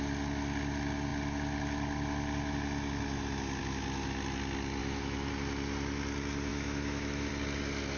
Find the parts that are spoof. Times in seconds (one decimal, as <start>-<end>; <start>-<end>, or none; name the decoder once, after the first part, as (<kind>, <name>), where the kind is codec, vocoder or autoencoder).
4.8-5.3 (autoencoder, DAC-VAE); 6.5-7.3